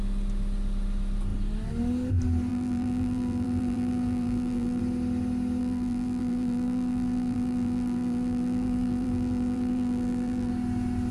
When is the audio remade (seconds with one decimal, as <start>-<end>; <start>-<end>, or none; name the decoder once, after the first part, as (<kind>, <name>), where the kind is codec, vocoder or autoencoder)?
2.5-4.8 (vocoder, BigVGAN v2); 5.6-10.5